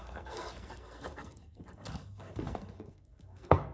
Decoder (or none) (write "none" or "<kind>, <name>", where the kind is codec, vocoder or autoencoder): codec, SNAC